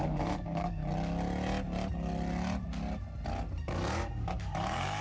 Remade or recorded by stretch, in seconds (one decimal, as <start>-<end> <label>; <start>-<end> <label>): 0.0-0.8 remade; 0.8-3.6 recorded; 3.6-5.0 remade